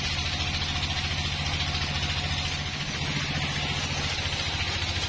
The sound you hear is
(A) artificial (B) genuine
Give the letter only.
B